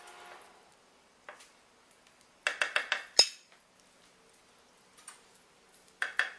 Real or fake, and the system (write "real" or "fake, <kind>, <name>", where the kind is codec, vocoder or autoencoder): real